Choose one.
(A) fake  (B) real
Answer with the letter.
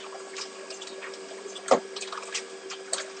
B